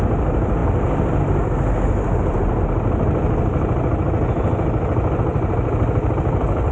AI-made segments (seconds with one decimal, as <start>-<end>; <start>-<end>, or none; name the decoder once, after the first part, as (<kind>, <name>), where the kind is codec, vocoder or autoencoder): 0.6-2.6 (vocoder, BigVGAN v2); 5.3-6.7